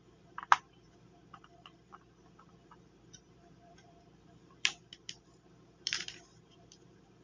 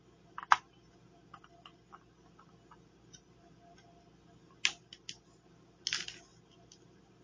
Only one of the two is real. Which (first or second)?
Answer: second